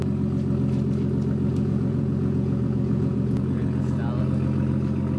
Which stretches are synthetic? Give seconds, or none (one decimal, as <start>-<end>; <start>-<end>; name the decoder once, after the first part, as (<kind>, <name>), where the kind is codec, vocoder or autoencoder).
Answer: 1.5-4.0 (vocoder, Vocos)